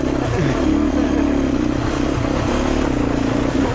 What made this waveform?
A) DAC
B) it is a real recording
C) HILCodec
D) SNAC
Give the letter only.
B